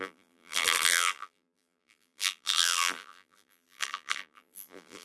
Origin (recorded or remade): remade